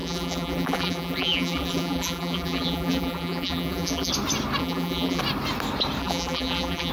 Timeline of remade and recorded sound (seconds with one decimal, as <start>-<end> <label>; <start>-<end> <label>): 0.0-4.1 remade; 4.1-4.6 recorded; 4.6-5.2 remade; 5.2-6.0 recorded; 6.0-6.9 remade